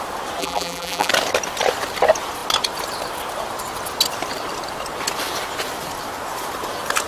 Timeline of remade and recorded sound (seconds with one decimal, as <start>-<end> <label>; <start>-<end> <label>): 0.0-0.4 recorded; 0.4-1.1 remade; 1.1-7.1 recorded